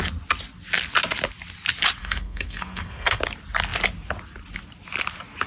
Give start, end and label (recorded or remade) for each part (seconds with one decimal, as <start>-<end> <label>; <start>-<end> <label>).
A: 0.0-2.0 recorded; 2.0-3.2 remade; 3.2-5.5 recorded